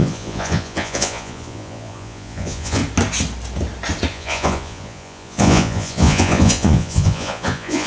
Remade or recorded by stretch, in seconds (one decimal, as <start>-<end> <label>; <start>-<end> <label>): 0.0-2.8 remade; 2.8-4.1 recorded; 4.1-7.9 remade